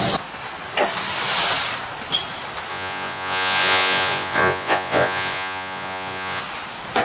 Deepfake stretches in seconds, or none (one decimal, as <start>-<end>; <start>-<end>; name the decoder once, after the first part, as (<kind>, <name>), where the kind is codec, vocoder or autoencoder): 2.7-6.4 (vocoder, Vocos)